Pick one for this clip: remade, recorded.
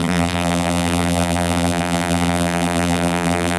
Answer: remade